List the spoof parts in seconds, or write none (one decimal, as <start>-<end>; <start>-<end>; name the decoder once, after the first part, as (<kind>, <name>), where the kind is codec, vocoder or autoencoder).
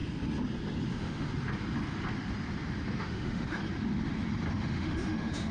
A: 0.9-1.3 (autoencoder, DAC-VAE); 3.0-3.6; 4.5-5.5